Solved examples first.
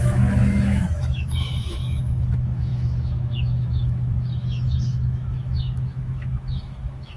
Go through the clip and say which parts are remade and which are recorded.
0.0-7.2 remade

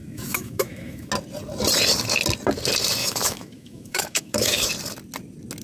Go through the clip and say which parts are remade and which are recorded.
0.0-1.1 remade; 1.1-3.0 recorded; 3.0-4.7 remade; 4.7-5.6 recorded

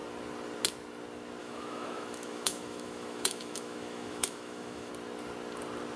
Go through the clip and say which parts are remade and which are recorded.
0.0-1.4 recorded; 1.4-4.9 remade; 4.9-6.0 recorded

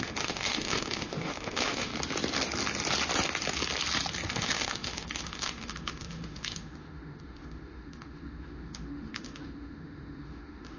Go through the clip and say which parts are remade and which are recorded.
0.0-1.9 remade; 1.9-4.3 recorded; 4.3-10.8 remade

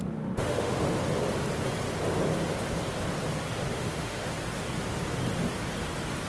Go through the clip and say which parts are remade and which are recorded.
0.0-0.9 remade; 0.9-3.7 recorded; 3.7-4.3 remade; 4.3-6.3 recorded

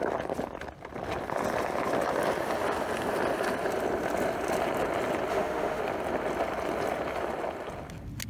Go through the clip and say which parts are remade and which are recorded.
0.0-5.3 recorded; 5.3-5.8 remade; 5.8-8.3 recorded

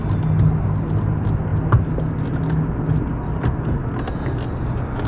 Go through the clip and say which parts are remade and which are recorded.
0.0-5.1 recorded